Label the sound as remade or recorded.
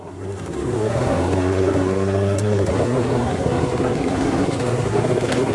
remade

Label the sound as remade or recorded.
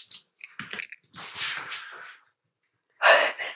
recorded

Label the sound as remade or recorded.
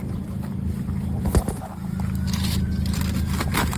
recorded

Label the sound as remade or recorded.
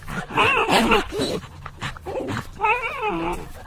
remade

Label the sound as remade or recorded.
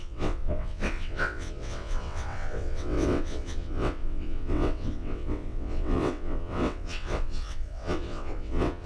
remade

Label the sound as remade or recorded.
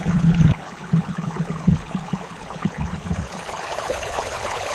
remade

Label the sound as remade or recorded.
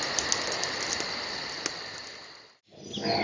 recorded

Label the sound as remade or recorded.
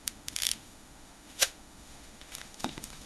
remade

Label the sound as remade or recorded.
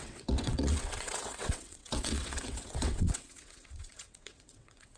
remade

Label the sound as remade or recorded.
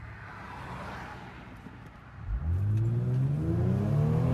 recorded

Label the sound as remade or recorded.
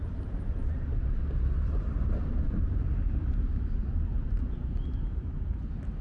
remade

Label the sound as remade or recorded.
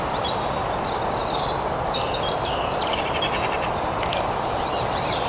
recorded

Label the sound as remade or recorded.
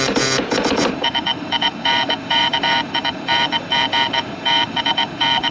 remade